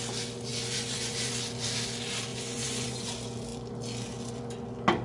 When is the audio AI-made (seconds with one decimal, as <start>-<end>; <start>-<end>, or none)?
0.5-1.3; 2.3-3.1